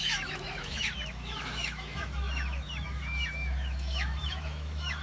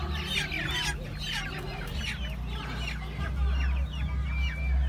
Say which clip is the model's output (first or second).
first